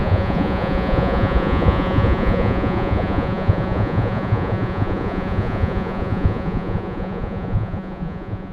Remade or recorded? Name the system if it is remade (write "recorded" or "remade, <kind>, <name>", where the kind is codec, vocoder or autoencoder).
remade, vocoder, Vocos